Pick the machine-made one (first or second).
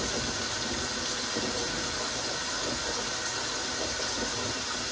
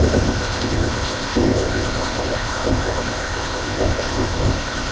second